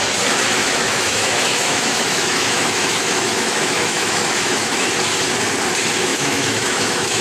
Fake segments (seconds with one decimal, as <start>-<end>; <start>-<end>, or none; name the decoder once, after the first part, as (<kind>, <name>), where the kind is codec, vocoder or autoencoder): 0.6-4.9 (autoencoder, DAC-VAE); 6.1-7.2